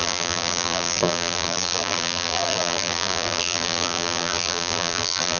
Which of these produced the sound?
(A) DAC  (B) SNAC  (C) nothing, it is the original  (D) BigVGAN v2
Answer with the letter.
D